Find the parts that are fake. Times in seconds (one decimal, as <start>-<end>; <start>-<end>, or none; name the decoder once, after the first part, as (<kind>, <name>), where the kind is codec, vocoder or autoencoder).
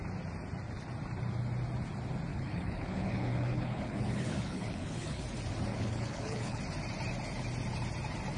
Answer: 2.3-5.2 (codec, HILCodec); 5.7-6.6